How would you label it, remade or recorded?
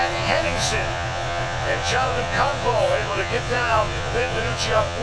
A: remade